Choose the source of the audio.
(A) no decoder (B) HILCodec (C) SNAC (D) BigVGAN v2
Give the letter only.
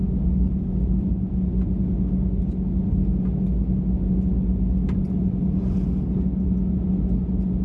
A